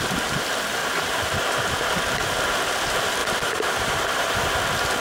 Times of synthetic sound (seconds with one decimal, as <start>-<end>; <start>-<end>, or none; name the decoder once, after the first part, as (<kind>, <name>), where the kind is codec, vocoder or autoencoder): 0.8-1.7 (vocoder, BigVGAN v2); 3.2-4.4